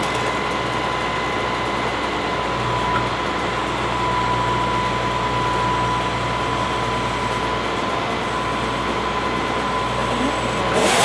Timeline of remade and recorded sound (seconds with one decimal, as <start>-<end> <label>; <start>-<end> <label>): 0.0-11.0 recorded

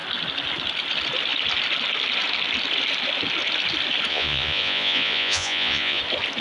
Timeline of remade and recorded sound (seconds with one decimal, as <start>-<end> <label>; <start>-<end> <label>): 0.0-4.1 recorded; 4.1-6.0 remade; 6.0-6.4 recorded